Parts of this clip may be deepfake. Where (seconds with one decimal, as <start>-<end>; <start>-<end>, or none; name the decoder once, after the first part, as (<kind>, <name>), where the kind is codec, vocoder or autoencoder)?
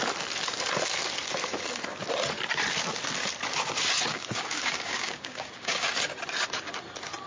4.1-5.9 (codec, DAC)